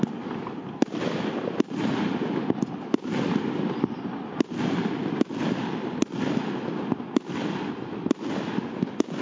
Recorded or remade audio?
recorded